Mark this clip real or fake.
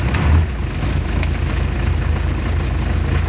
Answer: real